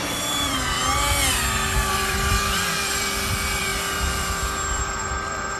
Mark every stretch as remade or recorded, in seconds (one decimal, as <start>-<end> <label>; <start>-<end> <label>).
0.0-0.8 remade; 0.8-1.9 recorded; 1.9-5.6 remade